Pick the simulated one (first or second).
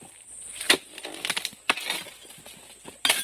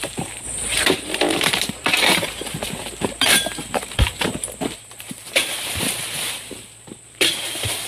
second